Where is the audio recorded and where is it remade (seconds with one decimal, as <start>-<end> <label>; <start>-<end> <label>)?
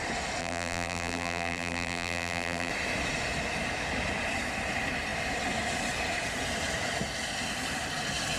0.0-0.4 recorded; 0.4-2.7 remade; 2.7-8.4 recorded